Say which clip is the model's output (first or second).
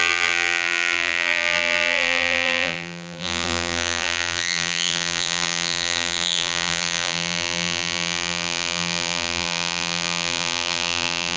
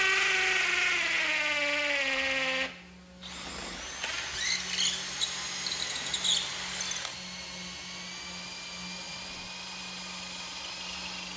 first